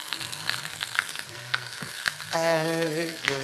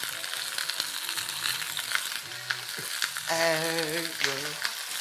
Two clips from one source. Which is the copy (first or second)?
first